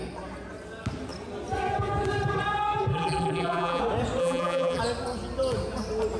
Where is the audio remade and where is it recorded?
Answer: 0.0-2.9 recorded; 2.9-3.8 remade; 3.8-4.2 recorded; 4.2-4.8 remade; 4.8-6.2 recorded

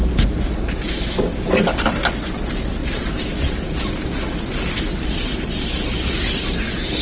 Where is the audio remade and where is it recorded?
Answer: 0.0-0.8 remade; 0.8-2.8 recorded; 2.8-3.9 remade; 3.9-7.0 recorded